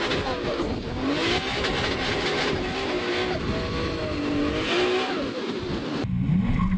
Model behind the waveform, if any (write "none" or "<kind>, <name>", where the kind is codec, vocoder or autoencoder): none